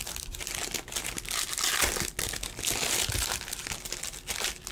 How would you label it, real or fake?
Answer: real